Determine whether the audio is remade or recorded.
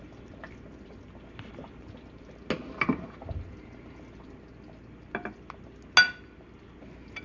recorded